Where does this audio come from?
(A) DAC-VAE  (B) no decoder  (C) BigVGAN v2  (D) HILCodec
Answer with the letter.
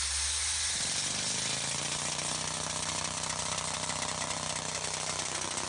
B